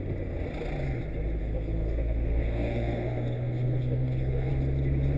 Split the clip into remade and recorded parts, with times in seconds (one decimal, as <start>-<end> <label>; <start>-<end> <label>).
0.0-1.4 recorded; 1.4-4.5 remade; 4.5-5.2 recorded